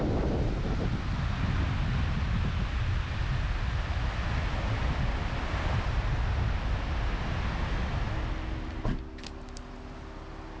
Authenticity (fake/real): real